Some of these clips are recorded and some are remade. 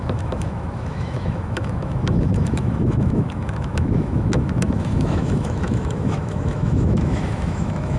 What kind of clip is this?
remade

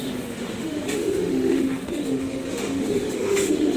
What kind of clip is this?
remade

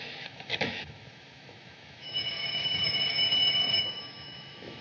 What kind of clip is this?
remade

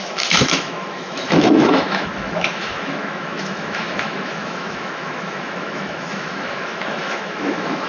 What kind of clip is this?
remade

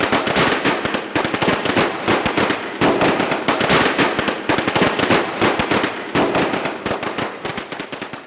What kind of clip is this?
recorded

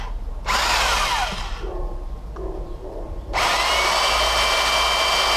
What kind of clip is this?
recorded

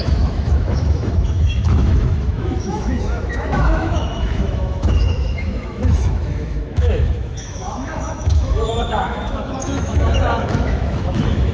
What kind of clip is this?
remade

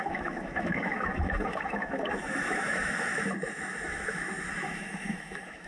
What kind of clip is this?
remade